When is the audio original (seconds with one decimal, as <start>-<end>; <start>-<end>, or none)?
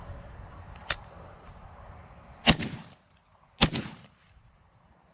2.0-3.8